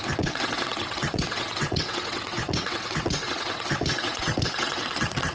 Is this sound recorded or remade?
remade